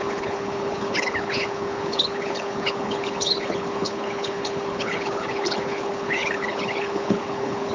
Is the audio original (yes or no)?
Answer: no